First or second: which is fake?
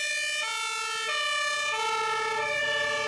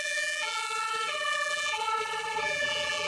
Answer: second